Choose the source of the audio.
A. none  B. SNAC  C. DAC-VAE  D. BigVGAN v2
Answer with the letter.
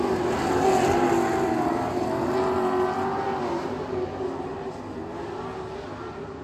A